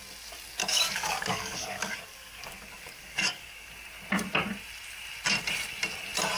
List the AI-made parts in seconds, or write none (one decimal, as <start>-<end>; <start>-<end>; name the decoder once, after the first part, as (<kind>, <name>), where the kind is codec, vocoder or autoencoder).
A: 0.6-3.7 (codec, DAC)